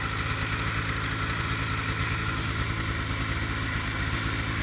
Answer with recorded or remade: recorded